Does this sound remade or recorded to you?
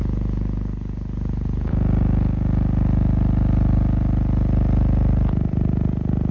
recorded